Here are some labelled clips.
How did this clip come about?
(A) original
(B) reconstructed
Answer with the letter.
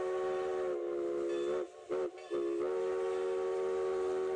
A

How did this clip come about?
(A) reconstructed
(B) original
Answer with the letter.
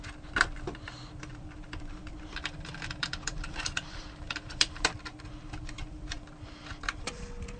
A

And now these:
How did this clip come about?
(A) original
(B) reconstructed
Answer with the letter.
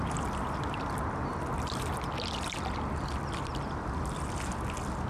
A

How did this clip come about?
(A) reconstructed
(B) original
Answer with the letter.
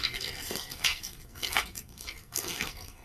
A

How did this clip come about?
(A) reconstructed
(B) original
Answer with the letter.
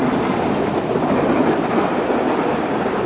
B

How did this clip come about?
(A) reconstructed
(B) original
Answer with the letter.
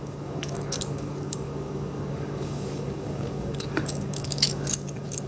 A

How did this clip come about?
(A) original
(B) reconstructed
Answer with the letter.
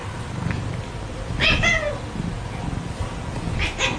A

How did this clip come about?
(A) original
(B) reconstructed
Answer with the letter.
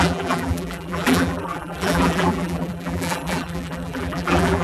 B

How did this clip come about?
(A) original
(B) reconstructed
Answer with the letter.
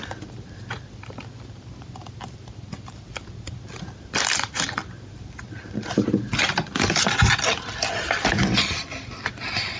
A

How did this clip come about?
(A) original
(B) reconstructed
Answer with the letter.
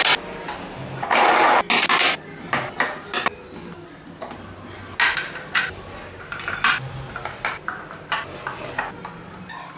A